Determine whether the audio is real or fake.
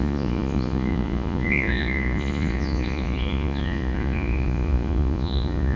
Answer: fake